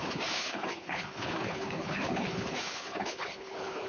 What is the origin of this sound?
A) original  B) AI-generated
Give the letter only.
B